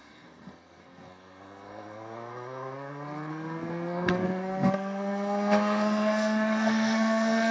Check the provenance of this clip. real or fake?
fake